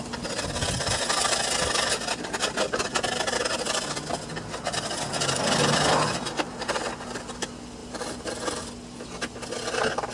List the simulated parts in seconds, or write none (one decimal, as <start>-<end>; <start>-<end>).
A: 7.8-8.6